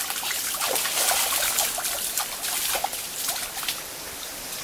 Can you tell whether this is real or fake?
fake